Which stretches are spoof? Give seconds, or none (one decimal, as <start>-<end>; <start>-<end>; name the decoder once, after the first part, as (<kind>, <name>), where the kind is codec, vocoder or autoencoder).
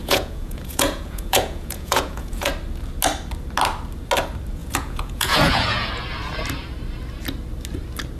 0.0-2.5 (vocoder, Vocos); 4.6-5.9